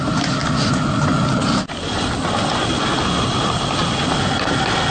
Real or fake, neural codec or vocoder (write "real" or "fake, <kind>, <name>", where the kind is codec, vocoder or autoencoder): real